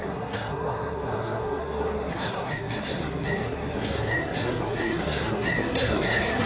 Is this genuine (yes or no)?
no